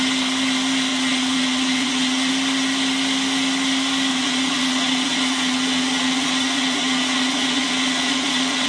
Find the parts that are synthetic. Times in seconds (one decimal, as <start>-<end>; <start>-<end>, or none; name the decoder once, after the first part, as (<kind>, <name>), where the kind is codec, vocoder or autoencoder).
0.9-2.3 (vocoder, Vocos); 4.1-8.7